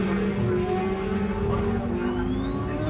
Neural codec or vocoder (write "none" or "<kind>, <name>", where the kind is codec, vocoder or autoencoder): none